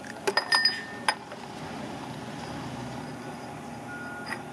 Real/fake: real